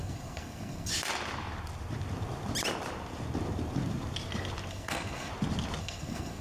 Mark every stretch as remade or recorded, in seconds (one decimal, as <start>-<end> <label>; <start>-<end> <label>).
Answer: 0.0-0.9 remade; 0.9-4.7 recorded; 4.7-5.3 remade; 5.3-5.8 recorded; 5.8-6.4 remade

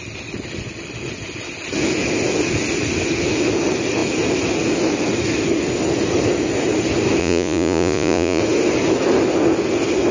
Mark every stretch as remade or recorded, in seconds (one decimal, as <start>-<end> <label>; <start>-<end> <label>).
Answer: 0.0-7.2 recorded; 7.2-8.4 remade; 8.4-10.1 recorded